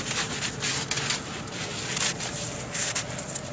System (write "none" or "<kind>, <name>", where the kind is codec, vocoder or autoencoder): none